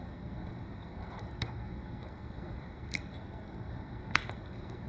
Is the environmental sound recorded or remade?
remade